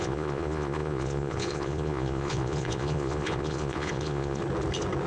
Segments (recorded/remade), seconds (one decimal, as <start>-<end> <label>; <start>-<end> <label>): 0.0-4.4 remade; 4.4-5.1 recorded

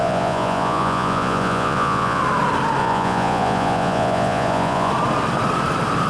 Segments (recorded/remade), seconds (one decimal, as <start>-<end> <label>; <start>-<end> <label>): 0.0-2.2 remade; 2.2-2.8 recorded; 2.8-4.9 remade; 4.9-6.1 recorded